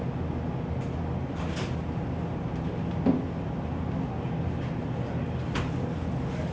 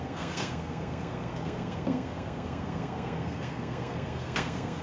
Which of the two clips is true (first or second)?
first